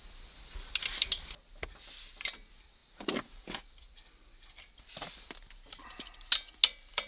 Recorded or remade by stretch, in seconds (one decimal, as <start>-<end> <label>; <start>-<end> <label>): 0.0-7.1 recorded